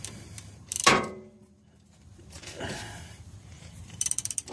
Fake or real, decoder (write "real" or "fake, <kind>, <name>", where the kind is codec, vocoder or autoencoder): fake, vocoder, BigVGAN v2